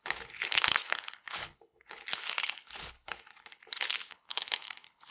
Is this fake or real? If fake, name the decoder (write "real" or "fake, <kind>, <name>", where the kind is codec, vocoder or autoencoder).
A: fake, codec, HILCodec